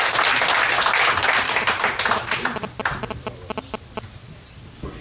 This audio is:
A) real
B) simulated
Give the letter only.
A